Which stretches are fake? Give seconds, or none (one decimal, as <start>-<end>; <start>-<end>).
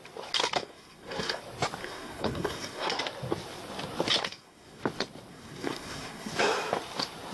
0.6-1.4; 1.8-3.0; 4.2-4.8; 5.3-6.3